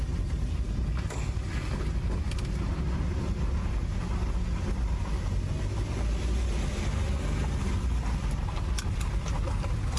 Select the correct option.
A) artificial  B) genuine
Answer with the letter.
B